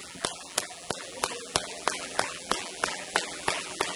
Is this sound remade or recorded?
remade